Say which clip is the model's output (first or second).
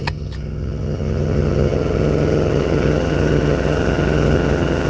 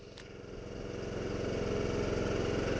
first